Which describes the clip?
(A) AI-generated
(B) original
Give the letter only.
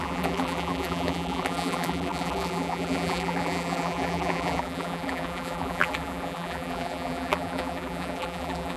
A